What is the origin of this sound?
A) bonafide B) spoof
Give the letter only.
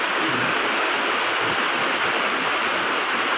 A